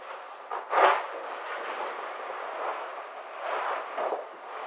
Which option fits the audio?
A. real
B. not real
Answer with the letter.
A